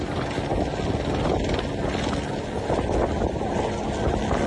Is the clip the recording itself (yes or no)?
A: yes